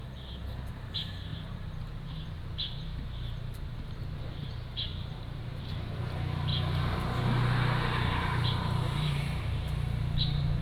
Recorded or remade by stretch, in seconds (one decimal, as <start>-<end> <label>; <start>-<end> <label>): 0.0-0.9 recorded; 0.9-6.5 remade; 6.5-8.0 recorded; 8.0-10.6 remade